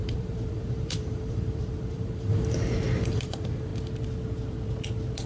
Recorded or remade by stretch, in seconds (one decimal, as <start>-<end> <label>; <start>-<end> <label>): 0.0-3.7 remade; 3.7-5.3 recorded